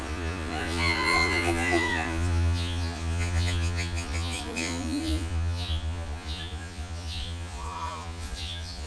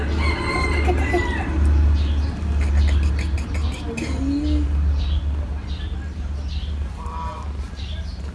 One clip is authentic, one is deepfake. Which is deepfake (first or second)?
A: first